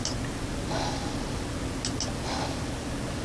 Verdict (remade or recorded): recorded